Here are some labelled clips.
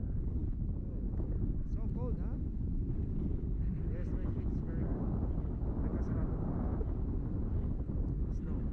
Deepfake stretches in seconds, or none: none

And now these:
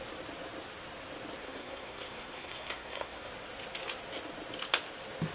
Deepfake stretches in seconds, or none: 1.4-3.3 (codec, SNAC)

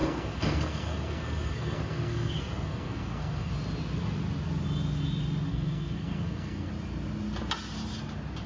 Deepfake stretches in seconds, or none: 0.0-3.5 (codec, SNAC); 5.5-6.7